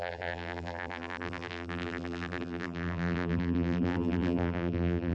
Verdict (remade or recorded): remade